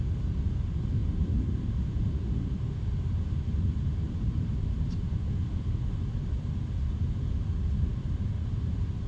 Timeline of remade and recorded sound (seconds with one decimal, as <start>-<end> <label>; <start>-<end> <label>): 0.0-1.0 recorded; 1.0-5.3 remade; 5.3-9.1 recorded